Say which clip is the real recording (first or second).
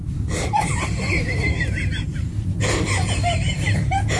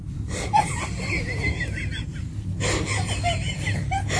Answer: second